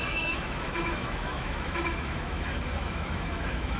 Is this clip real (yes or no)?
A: no